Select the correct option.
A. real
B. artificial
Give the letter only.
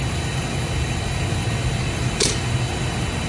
A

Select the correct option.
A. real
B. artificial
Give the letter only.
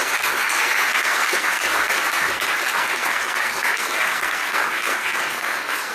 B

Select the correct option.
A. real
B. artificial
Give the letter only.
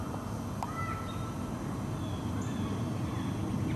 A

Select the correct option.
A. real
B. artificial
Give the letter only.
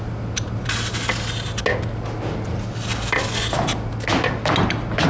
A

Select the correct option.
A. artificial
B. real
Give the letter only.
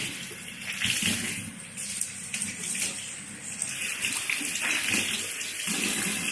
B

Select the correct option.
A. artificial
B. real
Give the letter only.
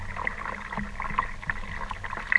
B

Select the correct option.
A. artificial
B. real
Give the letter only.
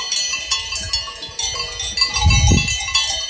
B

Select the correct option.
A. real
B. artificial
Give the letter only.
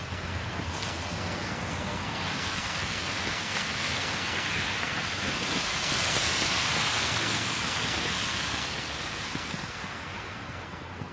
B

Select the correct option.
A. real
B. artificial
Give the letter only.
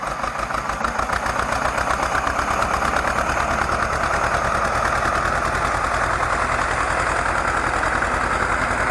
A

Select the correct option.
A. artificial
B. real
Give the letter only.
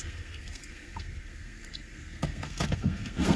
A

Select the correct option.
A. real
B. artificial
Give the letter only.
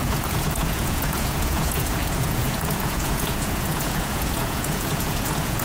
B